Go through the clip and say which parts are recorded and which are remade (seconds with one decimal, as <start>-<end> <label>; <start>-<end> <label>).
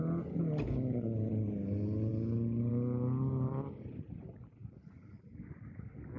0.0-6.2 recorded